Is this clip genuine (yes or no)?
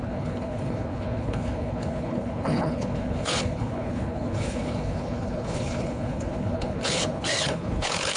no